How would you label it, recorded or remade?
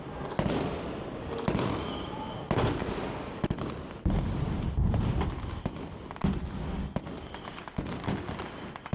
recorded